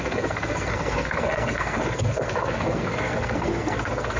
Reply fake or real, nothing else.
fake